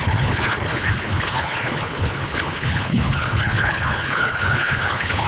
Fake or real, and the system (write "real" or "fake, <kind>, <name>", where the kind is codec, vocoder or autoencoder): fake, codec, HILCodec